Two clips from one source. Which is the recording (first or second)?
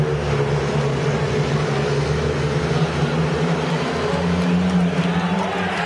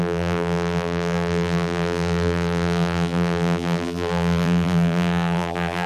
first